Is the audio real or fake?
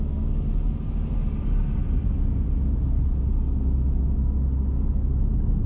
real